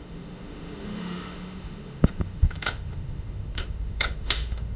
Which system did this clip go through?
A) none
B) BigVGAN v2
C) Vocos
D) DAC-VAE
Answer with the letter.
D